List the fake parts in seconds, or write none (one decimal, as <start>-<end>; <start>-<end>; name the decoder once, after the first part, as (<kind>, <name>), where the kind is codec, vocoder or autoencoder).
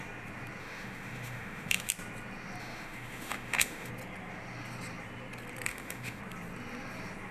0.6-1.9 (autoencoder, DAC-VAE); 2.6-3.9; 5.7-6.2